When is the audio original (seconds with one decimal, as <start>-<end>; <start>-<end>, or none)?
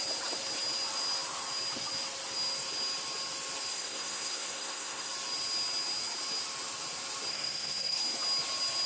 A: 0.0-3.7; 5.1-7.3; 8.0-8.9